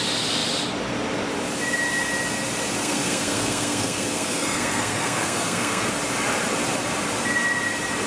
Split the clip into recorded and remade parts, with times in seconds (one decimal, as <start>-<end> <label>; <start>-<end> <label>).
0.0-2.8 recorded; 2.8-5.9 remade; 5.9-8.1 recorded